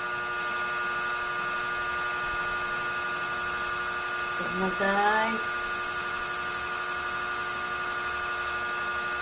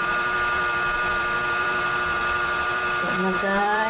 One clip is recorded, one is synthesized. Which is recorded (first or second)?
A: first